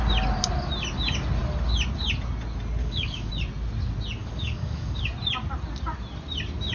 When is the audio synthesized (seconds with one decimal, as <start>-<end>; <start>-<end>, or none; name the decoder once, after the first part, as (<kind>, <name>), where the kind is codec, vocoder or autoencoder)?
2.8-3.3 (codec, DAC); 4.2-5.0